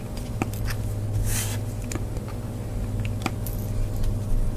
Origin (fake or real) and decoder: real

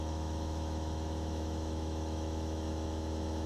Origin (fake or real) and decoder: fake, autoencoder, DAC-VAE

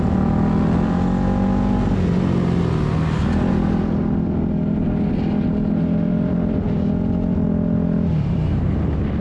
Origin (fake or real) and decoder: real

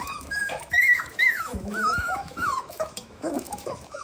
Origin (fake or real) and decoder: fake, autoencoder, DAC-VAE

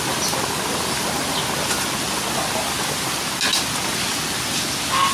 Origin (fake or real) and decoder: real